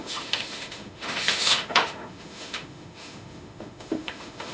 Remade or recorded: remade